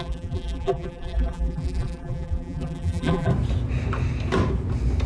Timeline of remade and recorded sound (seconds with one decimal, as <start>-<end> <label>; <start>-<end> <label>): 0.0-3.3 remade; 3.3-5.1 recorded